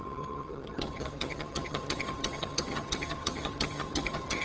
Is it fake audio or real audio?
fake